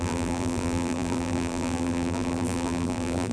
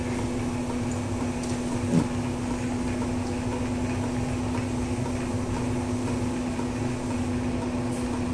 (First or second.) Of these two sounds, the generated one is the first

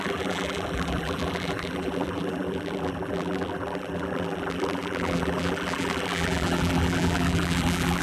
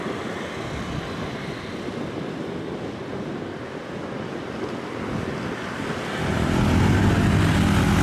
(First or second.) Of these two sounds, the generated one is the first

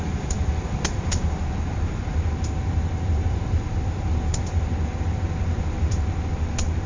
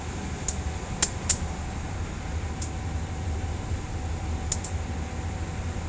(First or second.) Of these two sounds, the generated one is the first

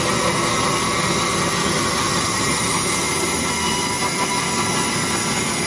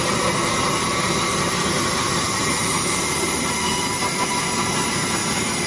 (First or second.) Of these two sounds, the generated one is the second